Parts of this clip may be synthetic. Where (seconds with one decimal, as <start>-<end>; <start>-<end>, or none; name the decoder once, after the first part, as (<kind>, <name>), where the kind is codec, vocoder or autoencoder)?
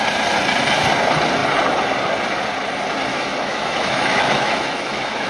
3.1-5.3 (autoencoder, DAC-VAE)